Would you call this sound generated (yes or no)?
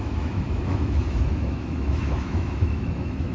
yes